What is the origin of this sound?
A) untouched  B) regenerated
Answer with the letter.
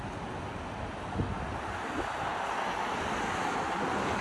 A